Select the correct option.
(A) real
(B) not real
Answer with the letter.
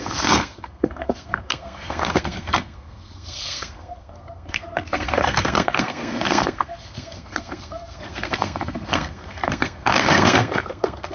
B